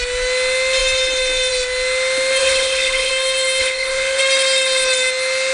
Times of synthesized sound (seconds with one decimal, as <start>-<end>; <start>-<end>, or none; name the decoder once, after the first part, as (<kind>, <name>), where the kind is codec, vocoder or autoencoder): 2.4-3.1 (codec, HILCodec); 3.6-4.2